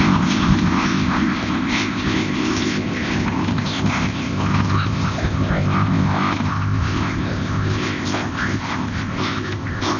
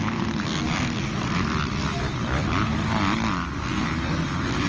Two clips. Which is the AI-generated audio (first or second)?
first